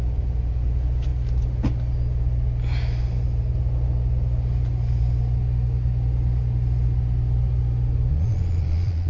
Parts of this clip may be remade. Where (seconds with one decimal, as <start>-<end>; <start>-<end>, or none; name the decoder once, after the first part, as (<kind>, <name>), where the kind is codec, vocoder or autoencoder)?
8.1-9.1 (vocoder, Vocos)

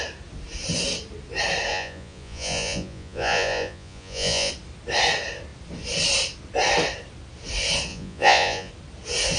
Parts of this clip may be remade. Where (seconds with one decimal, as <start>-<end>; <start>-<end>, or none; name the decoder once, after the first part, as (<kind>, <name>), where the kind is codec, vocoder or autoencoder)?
1.7-4.5 (vocoder, Vocos); 7.9-8.7

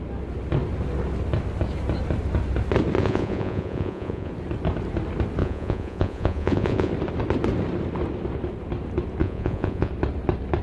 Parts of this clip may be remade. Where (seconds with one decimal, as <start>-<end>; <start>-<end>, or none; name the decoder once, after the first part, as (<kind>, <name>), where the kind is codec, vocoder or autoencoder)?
3.0-4.3 (vocoder, Vocos); 5.4-6.9; 9.2-9.9

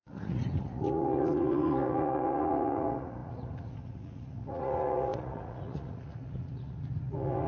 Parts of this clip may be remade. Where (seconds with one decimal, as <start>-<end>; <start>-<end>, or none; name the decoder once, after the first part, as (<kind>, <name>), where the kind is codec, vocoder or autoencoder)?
0.0-7.5 (vocoder, Vocos)

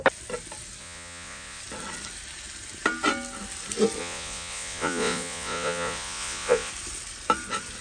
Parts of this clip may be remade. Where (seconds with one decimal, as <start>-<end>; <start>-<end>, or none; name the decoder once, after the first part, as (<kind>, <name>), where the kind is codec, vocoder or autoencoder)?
0.8-1.6 (vocoder, Vocos); 4.0-6.7

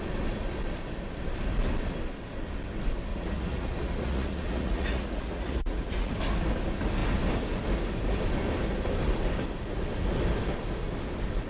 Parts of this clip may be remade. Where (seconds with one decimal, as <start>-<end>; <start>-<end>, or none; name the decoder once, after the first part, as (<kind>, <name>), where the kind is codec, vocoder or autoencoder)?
3.1-6.1 (vocoder, Vocos)

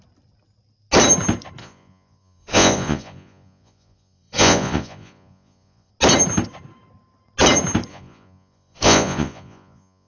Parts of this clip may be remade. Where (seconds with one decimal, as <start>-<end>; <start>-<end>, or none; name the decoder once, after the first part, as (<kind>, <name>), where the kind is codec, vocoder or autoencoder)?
1.6-5.9 (vocoder, Vocos); 7.9-10.1